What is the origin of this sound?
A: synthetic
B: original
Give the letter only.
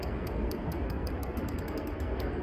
A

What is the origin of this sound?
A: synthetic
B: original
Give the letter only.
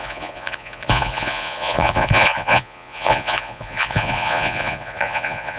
A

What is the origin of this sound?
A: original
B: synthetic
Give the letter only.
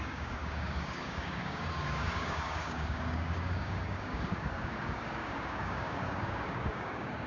B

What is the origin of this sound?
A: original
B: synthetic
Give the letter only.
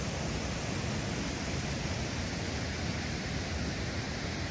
A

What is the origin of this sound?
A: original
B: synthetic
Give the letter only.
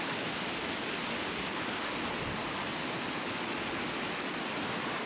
A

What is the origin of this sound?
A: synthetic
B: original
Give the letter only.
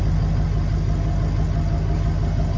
B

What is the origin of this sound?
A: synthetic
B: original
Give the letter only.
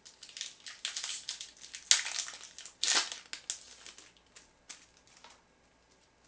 B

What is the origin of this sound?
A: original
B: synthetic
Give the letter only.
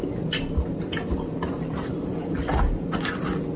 A